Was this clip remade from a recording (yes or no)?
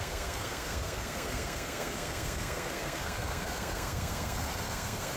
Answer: yes